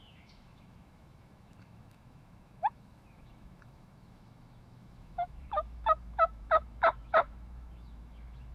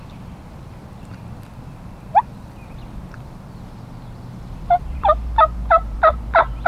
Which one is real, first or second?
second